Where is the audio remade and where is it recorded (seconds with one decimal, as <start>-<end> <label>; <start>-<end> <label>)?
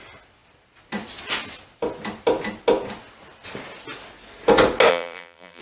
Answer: 0.0-4.9 recorded; 4.9-5.6 remade